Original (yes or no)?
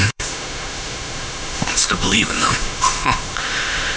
no